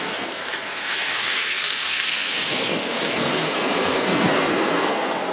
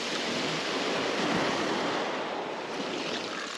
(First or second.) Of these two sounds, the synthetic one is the first